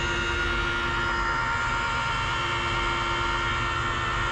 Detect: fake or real real